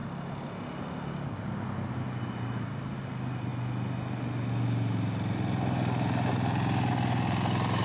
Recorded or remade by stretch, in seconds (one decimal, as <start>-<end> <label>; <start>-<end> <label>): 0.0-7.8 recorded